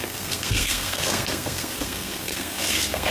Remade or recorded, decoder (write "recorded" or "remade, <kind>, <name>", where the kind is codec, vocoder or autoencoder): remade, codec, SNAC